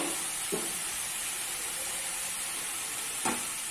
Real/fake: real